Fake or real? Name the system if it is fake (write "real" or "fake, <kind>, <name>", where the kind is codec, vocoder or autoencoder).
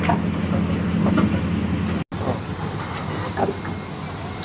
real